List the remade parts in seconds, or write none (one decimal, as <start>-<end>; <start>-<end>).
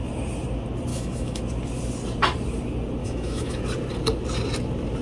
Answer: 0.9-1.4; 3.0-3.6